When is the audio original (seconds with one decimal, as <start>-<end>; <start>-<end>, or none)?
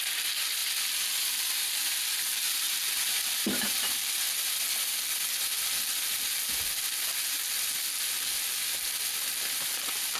0.0-2.3; 4.1-10.2